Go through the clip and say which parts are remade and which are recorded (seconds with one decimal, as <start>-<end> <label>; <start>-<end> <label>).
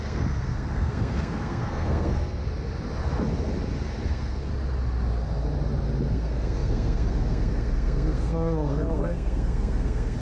0.0-2.4 remade; 2.4-4.1 recorded; 4.1-4.5 remade; 4.5-6.1 recorded; 6.1-10.2 remade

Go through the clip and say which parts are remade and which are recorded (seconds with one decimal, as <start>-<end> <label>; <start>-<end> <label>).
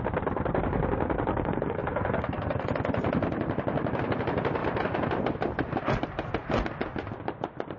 0.0-1.3 recorded; 1.3-2.7 remade; 2.7-7.8 recorded